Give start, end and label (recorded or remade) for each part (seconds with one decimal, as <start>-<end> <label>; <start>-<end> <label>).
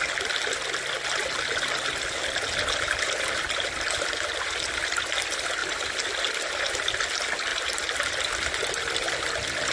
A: 0.0-9.7 recorded